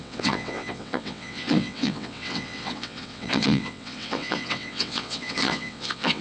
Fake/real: fake